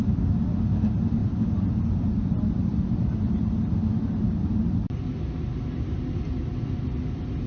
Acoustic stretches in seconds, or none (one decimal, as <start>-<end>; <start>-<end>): 0.0-7.5